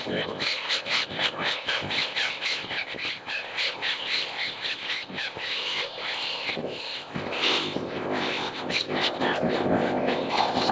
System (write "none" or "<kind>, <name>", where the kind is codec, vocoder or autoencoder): codec, ZipCodec